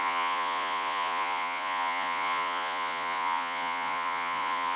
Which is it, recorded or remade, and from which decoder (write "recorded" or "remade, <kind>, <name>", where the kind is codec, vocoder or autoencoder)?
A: remade, vocoder, Vocos